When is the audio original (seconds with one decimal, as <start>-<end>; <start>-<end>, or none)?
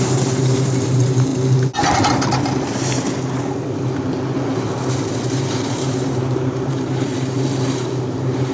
1.3-5.1; 7.1-7.8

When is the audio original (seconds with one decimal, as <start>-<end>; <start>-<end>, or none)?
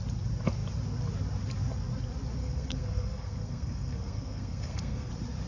0.0-2.4; 5.1-5.5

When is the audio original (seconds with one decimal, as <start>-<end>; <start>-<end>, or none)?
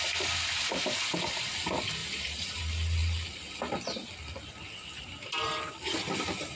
0.0-2.0; 2.6-6.5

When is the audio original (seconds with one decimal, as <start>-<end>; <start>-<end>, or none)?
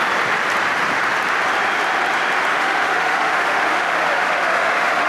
0.0-2.5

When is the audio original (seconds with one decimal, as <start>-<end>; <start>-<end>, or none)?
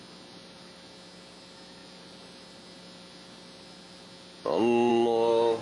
0.0-5.6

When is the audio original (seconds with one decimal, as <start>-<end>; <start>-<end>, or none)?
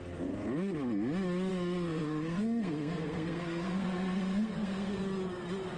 0.0-1.5; 5.0-5.8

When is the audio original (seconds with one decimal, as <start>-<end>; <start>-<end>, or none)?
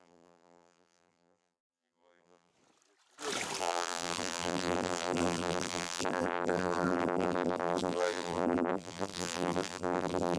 2.5-3.6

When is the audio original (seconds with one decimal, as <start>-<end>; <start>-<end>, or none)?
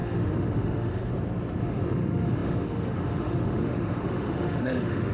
1.1-1.6